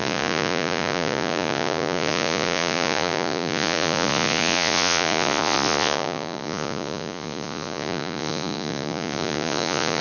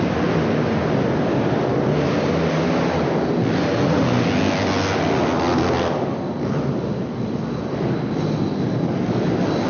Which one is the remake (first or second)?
first